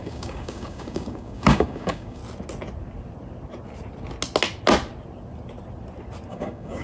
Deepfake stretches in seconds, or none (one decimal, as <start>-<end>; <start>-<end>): 0.0-2.2; 6.3-6.8